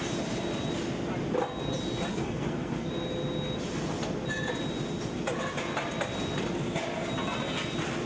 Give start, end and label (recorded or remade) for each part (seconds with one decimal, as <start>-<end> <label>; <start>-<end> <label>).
0.0-2.1 recorded; 2.1-2.9 remade; 2.9-8.1 recorded